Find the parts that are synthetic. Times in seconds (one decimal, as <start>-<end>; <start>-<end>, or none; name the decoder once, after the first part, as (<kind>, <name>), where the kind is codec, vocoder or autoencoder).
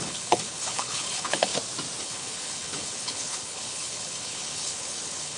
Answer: 0.0-1.5 (codec, HILCodec); 2.0-5.4